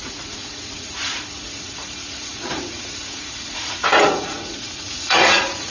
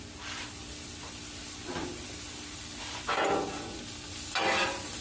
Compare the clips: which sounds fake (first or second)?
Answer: first